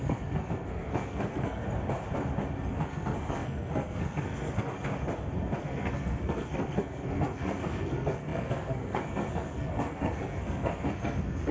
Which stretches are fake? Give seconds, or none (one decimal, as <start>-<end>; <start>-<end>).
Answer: 0.0-1.6; 2.7-4.7; 5.6-11.5